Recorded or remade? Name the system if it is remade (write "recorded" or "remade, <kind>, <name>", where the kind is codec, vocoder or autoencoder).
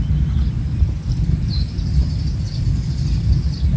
recorded